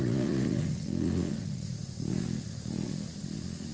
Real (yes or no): no